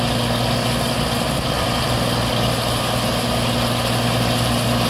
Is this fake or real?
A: real